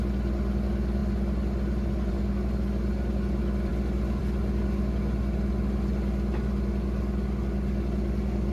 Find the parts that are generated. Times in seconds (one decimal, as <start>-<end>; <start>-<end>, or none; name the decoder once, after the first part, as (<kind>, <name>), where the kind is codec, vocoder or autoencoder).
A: none